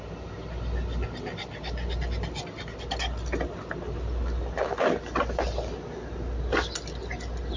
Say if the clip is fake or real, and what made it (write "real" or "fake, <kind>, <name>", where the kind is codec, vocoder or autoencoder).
real